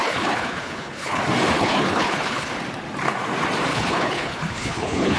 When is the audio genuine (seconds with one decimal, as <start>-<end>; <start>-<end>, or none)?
1.2-1.6; 2.5-3.7